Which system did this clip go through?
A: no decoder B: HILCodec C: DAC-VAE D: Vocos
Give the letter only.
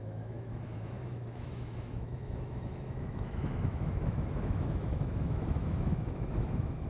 C